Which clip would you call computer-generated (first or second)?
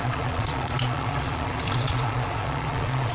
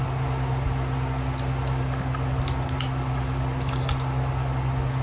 first